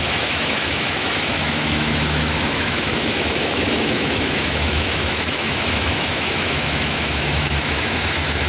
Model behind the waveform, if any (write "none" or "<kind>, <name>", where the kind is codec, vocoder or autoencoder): autoencoder, DAC-VAE